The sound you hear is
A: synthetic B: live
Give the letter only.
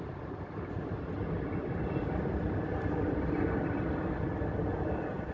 B